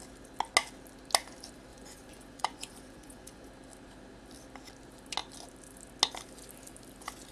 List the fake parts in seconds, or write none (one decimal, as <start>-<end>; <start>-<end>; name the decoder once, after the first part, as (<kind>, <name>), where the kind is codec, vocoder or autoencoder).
1.7-3.5 (vocoder, Vocos)

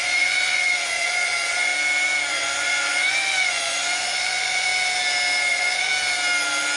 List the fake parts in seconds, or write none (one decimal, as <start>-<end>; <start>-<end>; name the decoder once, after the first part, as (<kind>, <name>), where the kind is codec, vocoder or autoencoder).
0.0-1.7 (vocoder, Vocos); 2.3-4.7; 5.5-5.9

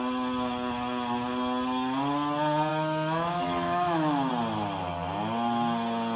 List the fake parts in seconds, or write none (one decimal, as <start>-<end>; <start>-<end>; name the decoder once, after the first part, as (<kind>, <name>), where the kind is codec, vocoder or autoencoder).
2.7-4.3 (autoencoder, DAC-VAE)